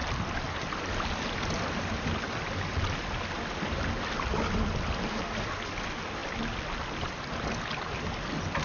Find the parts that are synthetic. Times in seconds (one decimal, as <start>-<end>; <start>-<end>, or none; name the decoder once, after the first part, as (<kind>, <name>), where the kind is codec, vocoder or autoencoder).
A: none